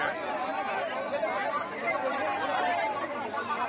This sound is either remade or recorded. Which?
recorded